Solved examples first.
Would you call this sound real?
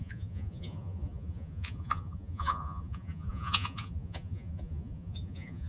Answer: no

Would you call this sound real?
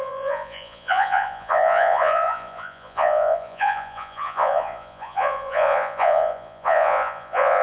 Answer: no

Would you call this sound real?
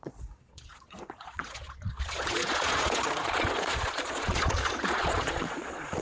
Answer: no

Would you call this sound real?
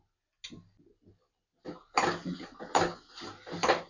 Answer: yes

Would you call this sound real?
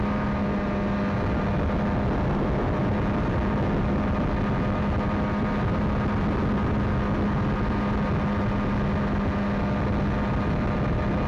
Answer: yes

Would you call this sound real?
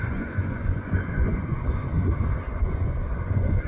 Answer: no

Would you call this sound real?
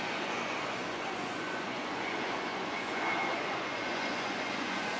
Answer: no